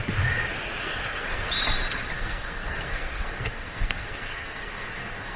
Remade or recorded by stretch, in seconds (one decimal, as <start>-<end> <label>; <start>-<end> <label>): 0.0-0.8 recorded; 0.8-1.5 remade; 1.5-2.1 recorded; 2.1-5.4 remade